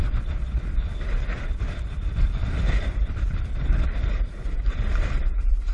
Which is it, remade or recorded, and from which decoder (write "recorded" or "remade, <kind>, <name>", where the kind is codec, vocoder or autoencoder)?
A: recorded